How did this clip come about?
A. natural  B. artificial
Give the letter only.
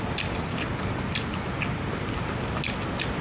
A